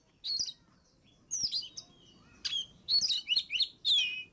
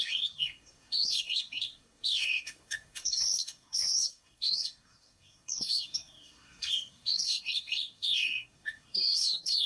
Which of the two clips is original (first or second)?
first